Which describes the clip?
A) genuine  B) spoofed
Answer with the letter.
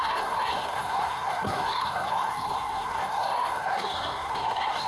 B